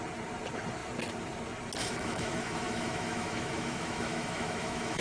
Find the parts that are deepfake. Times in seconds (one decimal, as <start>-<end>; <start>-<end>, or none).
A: 1.8-5.0